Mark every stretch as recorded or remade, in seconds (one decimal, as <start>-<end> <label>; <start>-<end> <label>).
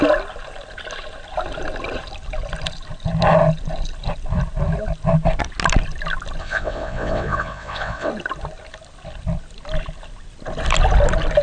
0.0-6.4 recorded; 6.4-8.1 remade; 8.1-11.4 recorded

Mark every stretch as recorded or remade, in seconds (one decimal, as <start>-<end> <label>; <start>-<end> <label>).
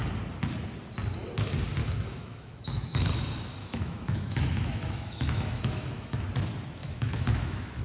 0.0-1.8 recorded; 1.8-3.1 remade; 3.1-3.6 recorded; 3.6-6.2 remade; 6.2-6.8 recorded; 6.8-7.8 remade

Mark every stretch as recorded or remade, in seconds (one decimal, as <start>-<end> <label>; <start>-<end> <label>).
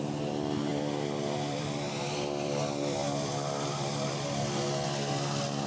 0.0-0.7 recorded; 0.7-4.1 remade; 4.1-5.7 recorded